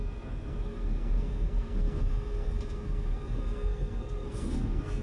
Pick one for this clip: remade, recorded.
remade